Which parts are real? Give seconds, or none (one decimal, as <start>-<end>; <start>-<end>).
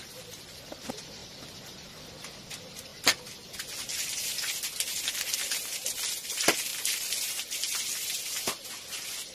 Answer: 0.0-9.3